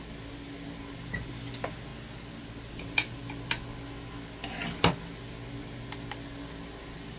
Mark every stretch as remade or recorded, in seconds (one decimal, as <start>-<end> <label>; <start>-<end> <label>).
0.0-7.2 recorded